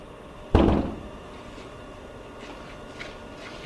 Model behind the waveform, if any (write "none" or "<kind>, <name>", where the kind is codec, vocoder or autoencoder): none